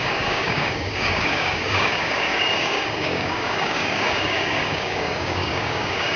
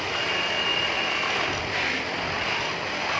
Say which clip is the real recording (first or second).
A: second